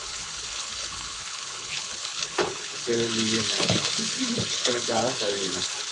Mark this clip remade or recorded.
remade